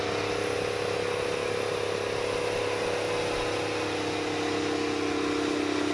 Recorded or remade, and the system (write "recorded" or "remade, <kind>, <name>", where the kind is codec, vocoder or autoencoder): recorded